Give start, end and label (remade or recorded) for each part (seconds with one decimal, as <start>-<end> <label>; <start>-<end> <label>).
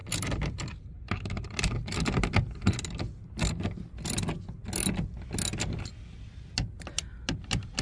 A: 0.0-7.8 recorded